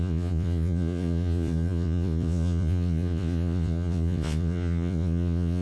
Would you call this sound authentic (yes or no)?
no